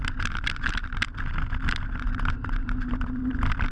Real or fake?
real